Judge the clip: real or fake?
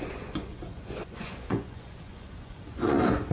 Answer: fake